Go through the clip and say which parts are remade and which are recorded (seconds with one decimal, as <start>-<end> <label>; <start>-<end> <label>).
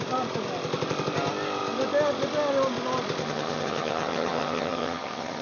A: 0.0-3.2 recorded; 3.2-5.4 remade